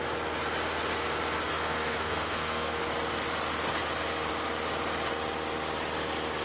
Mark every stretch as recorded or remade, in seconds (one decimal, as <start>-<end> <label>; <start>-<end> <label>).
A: 0.0-1.5 recorded; 1.5-2.8 remade; 2.8-6.4 recorded